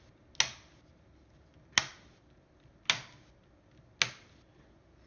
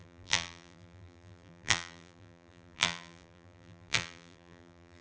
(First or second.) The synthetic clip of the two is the second